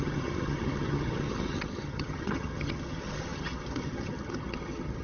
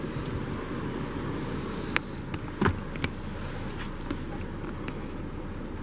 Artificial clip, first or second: first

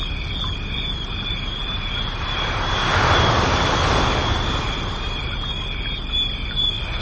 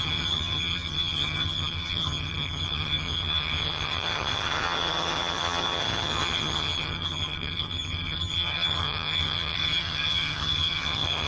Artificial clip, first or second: second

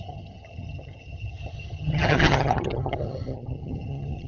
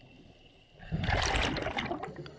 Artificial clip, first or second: first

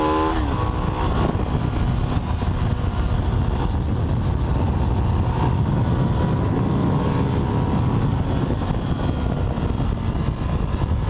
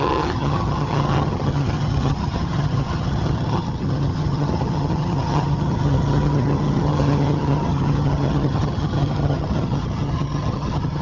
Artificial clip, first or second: second